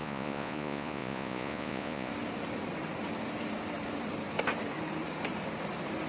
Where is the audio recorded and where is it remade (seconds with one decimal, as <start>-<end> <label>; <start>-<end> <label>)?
0.0-2.1 remade; 2.1-6.1 recorded

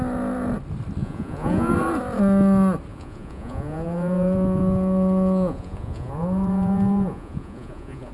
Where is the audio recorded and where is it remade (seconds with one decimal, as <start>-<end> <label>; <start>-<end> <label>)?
0.0-1.0 recorded; 1.0-1.7 remade; 1.7-2.9 recorded; 2.9-8.1 remade

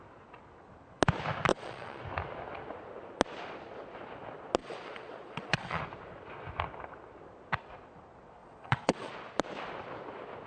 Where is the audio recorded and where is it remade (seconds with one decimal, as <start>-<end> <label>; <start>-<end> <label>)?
0.0-1.5 recorded; 1.5-2.0 remade; 2.0-4.6 recorded; 4.6-5.8 remade; 5.8-8.4 recorded; 8.4-9.1 remade; 9.1-10.5 recorded